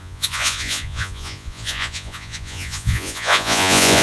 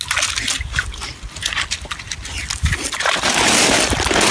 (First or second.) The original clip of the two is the second